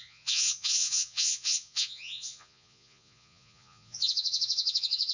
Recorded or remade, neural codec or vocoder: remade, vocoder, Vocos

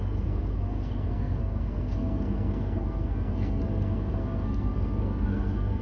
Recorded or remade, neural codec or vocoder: remade, codec, SNAC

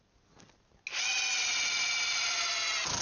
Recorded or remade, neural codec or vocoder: recorded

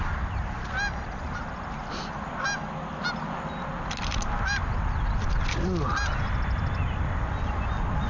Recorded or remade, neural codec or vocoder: recorded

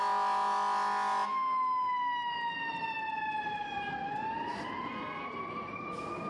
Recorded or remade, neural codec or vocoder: recorded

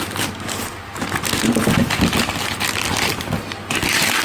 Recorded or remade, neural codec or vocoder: recorded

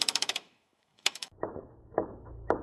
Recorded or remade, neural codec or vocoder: remade, autoencoder, DAC-VAE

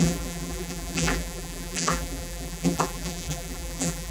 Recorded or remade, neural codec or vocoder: remade, vocoder, BigVGAN v2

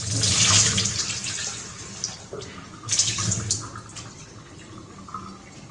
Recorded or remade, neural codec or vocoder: recorded